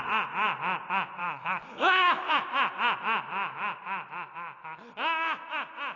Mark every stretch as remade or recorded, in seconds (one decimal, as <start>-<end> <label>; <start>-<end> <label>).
0.0-1.2 recorded; 1.2-2.4 remade; 2.4-6.0 recorded